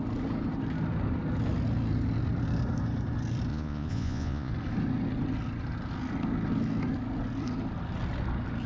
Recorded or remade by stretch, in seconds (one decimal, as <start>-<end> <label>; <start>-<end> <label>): 0.0-3.5 recorded; 3.5-4.5 remade; 4.5-8.7 recorded